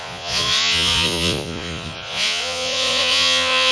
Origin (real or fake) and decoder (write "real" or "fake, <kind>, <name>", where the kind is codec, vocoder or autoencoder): fake, vocoder, Vocos